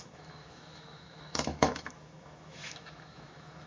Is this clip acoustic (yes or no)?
no